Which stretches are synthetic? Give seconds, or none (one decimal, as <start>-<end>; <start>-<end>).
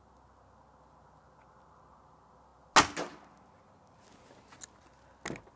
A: none